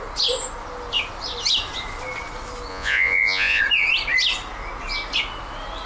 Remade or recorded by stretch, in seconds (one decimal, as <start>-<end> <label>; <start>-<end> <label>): 0.0-2.7 recorded; 2.7-3.6 remade; 3.6-5.9 recorded